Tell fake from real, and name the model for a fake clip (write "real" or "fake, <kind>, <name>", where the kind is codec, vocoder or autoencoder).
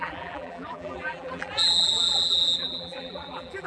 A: fake, vocoder, BigVGAN v2